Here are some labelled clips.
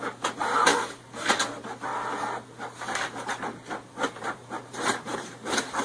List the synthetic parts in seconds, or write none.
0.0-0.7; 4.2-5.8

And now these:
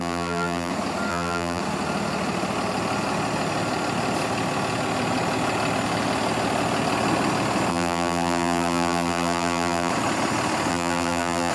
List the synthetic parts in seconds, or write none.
0.0-0.7; 1.1-1.6; 7.7-9.9; 10.7-11.5

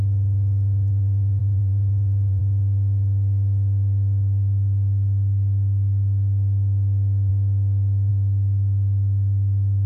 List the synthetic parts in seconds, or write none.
1.4-2.4